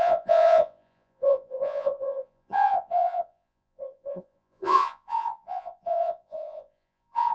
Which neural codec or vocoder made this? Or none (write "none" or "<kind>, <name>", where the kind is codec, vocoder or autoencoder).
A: vocoder, Vocos